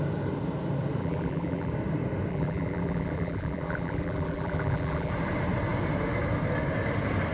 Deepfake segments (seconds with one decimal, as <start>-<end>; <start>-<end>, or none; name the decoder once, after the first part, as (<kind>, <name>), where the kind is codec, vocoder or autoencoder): 1.0-1.7 (vocoder, BigVGAN v2); 2.3-5.1